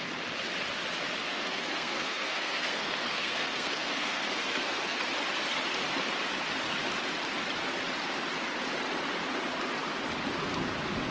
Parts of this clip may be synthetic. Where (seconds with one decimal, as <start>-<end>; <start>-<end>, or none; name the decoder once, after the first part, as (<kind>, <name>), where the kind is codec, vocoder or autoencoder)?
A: 1.2-5.0 (codec, SNAC)